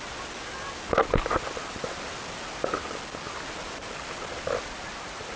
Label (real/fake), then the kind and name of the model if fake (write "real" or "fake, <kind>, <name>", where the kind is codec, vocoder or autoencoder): real